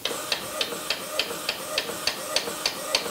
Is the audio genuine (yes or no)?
yes